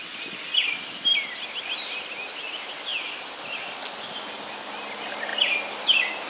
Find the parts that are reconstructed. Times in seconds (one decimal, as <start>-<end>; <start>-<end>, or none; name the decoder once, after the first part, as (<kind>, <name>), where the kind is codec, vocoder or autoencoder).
none